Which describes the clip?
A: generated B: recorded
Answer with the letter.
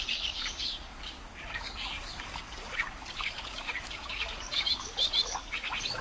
A